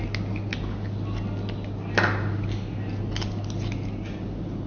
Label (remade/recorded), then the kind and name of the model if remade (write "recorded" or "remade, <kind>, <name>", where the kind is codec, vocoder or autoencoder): recorded